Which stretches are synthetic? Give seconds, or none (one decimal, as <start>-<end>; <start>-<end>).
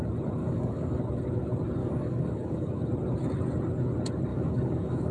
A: 0.4-1.0; 1.8-2.7; 4.3-5.1